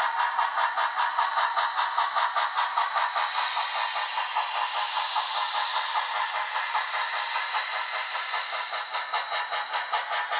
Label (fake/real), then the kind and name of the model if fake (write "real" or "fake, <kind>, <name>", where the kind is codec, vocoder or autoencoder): real